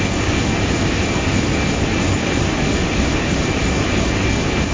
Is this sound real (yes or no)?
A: yes